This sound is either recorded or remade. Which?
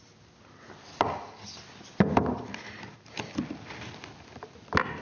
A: recorded